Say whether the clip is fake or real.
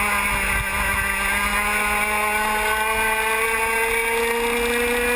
real